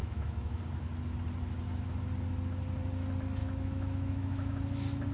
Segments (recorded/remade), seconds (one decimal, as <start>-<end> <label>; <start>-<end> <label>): 0.0-0.6 remade; 0.6-3.4 recorded; 3.4-4.6 remade; 4.6-5.1 recorded